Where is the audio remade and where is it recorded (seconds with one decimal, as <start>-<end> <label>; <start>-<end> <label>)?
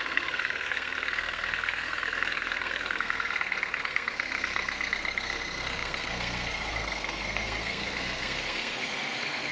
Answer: 0.0-9.5 remade